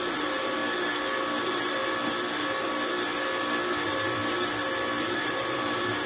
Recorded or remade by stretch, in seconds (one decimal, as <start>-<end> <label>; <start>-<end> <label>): 0.0-0.6 remade; 0.6-1.4 recorded; 1.4-1.8 remade; 1.8-5.1 recorded; 5.1-6.1 remade